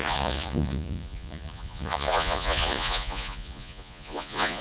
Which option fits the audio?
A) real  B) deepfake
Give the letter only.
B